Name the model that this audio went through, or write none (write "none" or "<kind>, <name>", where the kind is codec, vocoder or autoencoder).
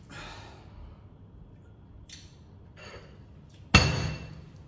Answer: none